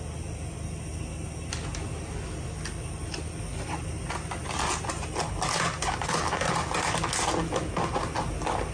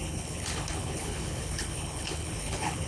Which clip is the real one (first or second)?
first